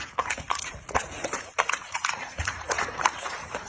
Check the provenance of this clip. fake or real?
fake